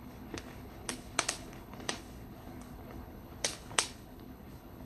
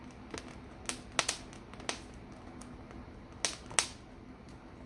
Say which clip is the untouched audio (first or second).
second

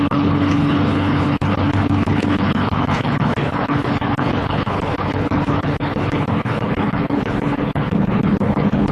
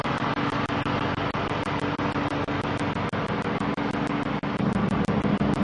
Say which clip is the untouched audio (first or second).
second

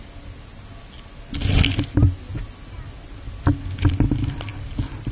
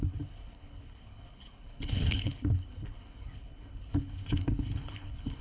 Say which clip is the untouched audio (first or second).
first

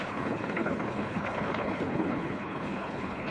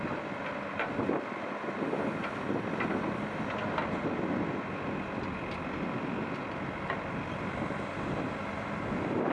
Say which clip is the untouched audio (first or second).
second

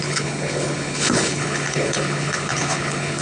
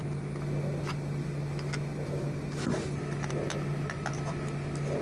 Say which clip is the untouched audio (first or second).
second